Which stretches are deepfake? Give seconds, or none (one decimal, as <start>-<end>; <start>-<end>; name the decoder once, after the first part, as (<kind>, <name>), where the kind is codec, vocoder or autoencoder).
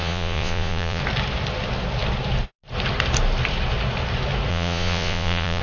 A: 0.0-1.0 (vocoder, Vocos); 4.5-5.6